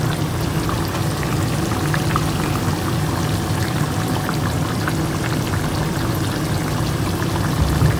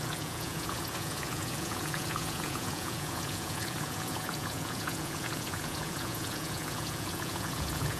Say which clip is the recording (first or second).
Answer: first